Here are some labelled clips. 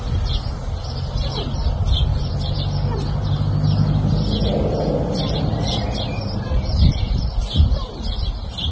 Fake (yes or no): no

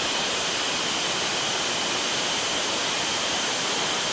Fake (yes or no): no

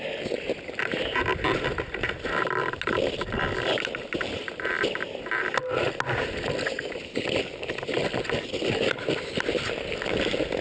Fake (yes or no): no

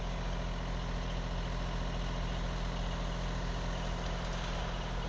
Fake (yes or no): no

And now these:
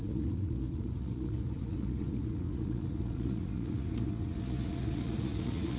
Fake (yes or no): yes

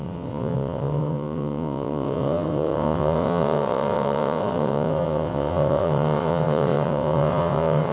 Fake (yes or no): yes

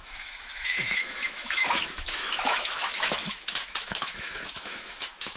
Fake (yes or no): yes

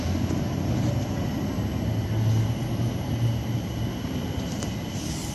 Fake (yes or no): no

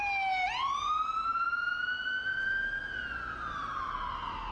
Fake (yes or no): no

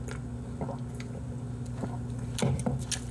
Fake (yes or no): no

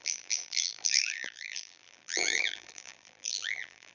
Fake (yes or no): yes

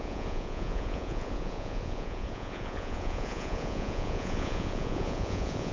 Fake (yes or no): yes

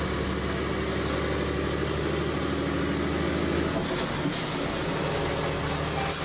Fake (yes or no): no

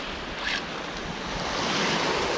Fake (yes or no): no